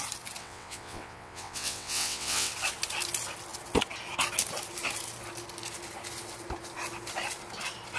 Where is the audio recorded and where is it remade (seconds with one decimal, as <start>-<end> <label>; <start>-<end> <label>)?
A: 0.0-0.4 recorded; 0.4-2.5 remade; 2.5-8.0 recorded